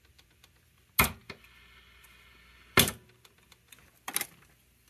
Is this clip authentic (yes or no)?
yes